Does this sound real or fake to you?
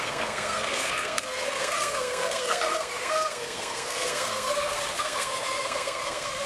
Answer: fake